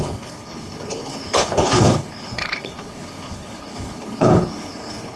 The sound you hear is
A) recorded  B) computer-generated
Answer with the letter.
B